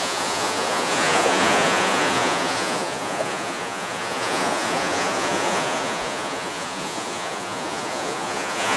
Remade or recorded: remade